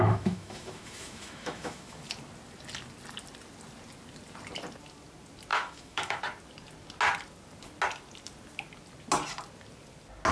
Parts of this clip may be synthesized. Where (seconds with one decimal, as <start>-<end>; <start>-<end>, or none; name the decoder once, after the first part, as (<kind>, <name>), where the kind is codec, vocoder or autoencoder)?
0.0-2.0 (autoencoder, DAC-VAE); 5.5-6.2